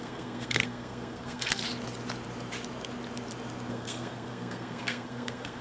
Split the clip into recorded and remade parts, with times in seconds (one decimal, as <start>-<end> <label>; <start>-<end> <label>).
0.0-1.6 remade; 1.6-3.7 recorded; 3.7-5.6 remade